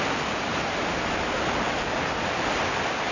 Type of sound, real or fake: real